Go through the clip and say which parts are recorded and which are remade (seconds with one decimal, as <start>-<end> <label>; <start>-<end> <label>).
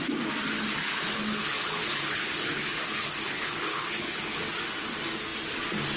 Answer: 0.0-0.8 recorded; 0.8-4.4 remade; 4.4-6.0 recorded